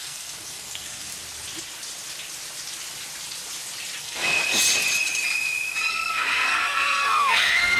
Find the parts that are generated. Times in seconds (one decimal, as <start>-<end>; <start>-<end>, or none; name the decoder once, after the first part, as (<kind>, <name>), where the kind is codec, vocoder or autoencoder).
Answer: 0.0-1.1 (codec, SNAC); 4.0-4.4; 5.9-7.8

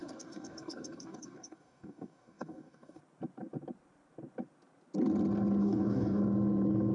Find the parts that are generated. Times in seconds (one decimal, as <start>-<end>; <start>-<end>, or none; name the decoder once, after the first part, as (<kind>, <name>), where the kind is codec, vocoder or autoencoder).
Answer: 0.0-3.0 (codec, DAC); 5.6-6.2

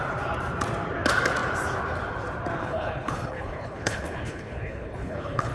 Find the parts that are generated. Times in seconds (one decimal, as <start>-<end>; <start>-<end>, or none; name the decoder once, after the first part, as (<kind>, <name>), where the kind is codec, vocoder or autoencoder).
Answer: 2.6-5.5 (codec, HILCodec)